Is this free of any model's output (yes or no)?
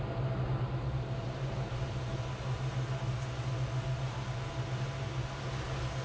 yes